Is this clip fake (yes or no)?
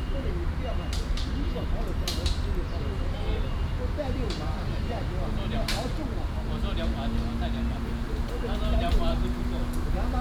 no